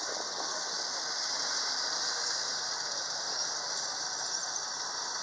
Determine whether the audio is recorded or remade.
recorded